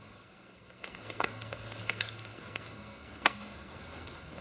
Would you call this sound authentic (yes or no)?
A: no